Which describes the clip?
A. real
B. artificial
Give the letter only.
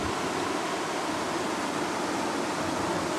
A